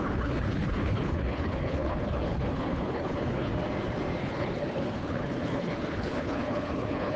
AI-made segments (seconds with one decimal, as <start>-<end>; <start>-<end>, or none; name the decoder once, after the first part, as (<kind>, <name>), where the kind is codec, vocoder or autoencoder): 0.0-3.5 (codec, HILCodec); 4.2-7.2

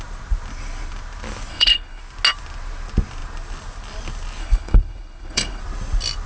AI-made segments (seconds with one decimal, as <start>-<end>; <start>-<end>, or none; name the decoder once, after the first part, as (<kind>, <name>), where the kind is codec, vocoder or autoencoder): 1.5-2.0 (codec, HILCodec); 4.4-5.6

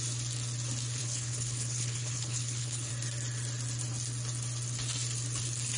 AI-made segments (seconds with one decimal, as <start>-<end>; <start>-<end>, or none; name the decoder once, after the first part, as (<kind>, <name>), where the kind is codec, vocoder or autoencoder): 1.0-2.9 (codec, HILCodec)

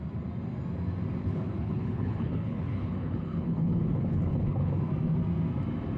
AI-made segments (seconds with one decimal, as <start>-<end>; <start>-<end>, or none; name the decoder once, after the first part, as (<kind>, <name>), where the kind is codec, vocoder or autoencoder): 1.2-4.8 (codec, HILCodec)

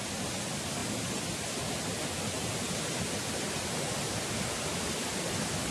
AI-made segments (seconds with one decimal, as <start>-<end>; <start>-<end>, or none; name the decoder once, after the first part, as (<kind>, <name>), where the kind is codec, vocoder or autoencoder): none

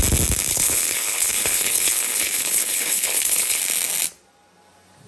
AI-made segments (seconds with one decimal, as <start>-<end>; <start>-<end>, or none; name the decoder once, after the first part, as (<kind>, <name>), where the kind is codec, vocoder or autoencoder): 0.5-3.6 (codec, HILCodec)

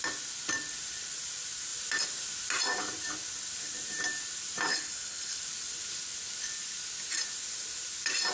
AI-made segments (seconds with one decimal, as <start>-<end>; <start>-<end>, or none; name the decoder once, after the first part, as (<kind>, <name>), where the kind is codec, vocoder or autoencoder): 4.7-5.4 (codec, HILCodec)

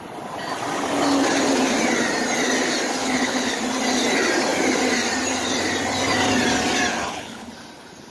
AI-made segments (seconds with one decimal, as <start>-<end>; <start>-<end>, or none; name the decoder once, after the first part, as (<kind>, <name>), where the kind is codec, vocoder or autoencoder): 3.0-3.5 (codec, HILCodec); 6.9-7.5